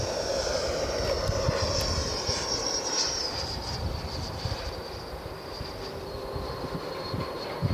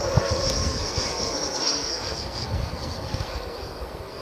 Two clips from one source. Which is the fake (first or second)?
second